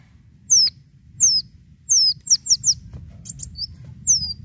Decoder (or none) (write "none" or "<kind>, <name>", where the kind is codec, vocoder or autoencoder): none